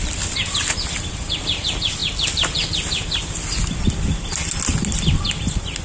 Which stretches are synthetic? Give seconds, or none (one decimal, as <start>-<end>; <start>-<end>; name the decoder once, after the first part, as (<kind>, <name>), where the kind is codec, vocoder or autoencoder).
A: none